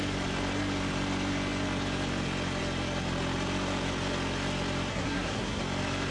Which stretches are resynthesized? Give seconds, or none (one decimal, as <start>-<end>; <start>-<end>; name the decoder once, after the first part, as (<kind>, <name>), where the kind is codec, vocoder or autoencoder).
4.9-5.6 (codec, SNAC)

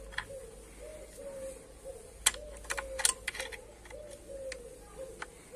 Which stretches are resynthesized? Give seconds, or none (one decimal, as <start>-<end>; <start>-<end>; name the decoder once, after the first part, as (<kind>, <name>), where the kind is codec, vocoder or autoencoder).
none

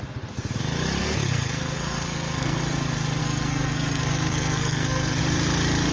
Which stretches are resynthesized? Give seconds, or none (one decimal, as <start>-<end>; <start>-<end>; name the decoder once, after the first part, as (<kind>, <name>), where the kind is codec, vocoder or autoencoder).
1.0-2.6 (codec, SNAC); 3.2-5.2

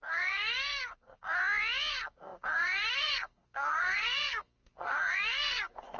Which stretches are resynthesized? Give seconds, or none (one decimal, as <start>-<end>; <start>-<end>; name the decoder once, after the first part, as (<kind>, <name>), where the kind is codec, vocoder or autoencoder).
0.0-1.4 (codec, SNAC); 1.9-6.0

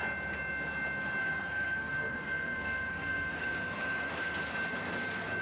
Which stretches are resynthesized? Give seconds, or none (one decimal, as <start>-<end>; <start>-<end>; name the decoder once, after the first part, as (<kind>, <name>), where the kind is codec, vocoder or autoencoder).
1.2-4.4 (codec, SNAC)

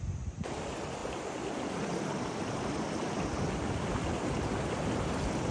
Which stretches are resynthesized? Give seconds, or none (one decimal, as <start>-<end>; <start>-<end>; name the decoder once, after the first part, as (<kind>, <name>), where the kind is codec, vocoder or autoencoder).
none

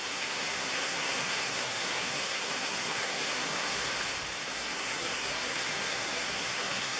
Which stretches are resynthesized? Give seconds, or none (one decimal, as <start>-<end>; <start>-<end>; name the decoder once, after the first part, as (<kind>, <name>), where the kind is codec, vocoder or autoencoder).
0.0-3.9 (codec, SNAC); 4.5-7.0

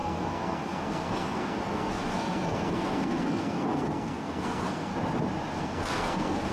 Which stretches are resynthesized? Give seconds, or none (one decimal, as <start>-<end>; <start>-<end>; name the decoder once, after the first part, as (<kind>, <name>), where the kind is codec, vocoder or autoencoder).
0.0-4.9 (codec, SNAC); 5.6-6.5